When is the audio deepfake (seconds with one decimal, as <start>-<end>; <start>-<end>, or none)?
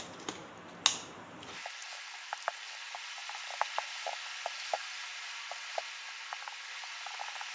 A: none